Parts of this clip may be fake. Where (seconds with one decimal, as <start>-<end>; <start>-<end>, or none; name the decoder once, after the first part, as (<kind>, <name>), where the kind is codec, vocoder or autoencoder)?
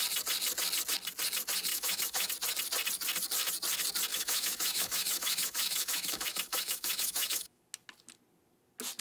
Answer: 1.7-2.3 (autoencoder, DAC-VAE); 4.1-7.6